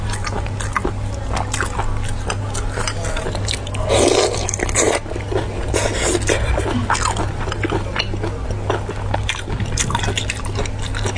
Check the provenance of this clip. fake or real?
real